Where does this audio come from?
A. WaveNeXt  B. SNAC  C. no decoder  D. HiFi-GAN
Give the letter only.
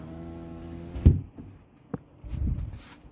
C